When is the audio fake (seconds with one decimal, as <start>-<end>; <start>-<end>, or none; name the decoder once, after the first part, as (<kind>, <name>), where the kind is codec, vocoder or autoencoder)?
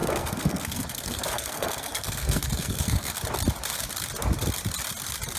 0.0-3.2 (codec, SNAC)